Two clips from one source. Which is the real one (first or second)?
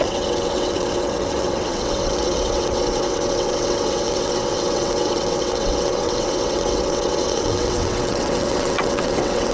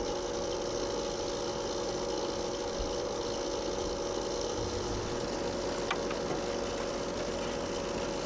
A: second